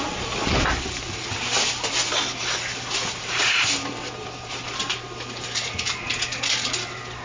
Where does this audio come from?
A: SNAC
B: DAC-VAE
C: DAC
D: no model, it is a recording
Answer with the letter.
D